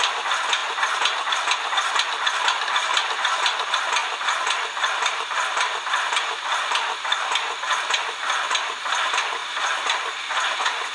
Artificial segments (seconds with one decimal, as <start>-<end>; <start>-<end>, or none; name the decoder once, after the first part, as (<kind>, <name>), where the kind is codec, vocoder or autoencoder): 4.0-7.6 (vocoder, BigVGAN v2)